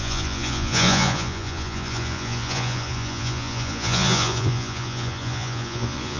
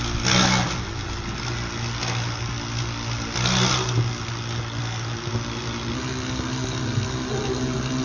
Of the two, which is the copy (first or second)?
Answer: first